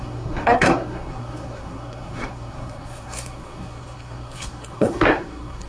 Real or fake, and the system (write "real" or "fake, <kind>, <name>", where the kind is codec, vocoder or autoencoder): fake, codec, SNAC